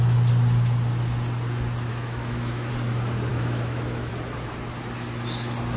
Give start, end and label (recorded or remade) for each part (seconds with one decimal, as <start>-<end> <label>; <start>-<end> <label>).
0.0-1.9 recorded; 1.9-2.7 remade; 2.7-3.3 recorded; 3.3-4.1 remade; 4.1-5.8 recorded